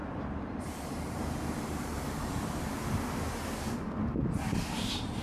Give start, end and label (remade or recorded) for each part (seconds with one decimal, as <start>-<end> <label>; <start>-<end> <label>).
0.0-2.9 remade; 2.9-5.2 recorded